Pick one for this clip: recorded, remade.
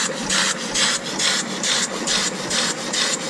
recorded